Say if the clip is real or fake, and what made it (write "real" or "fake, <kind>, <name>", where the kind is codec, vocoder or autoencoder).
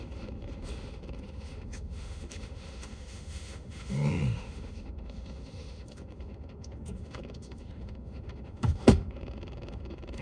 fake, autoencoder, DAC-VAE